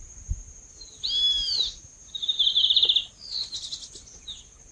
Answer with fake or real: real